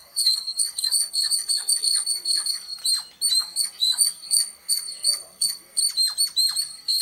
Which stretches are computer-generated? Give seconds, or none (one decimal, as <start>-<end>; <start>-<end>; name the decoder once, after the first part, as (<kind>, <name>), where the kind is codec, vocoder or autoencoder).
0.0-2.8 (codec, SNAC); 3.4-5.8; 6.6-7.0